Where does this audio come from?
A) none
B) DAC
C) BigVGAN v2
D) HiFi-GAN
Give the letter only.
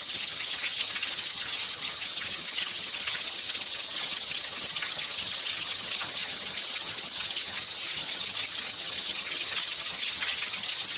D